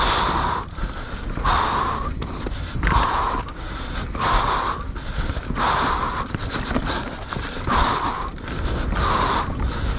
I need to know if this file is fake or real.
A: real